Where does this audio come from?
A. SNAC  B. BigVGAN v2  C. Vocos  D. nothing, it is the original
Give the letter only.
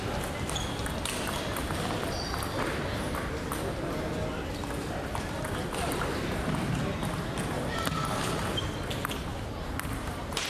D